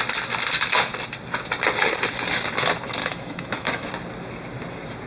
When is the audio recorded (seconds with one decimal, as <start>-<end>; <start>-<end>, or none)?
0.0-3.0; 3.9-5.1